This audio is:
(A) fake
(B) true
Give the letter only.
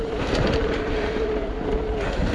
B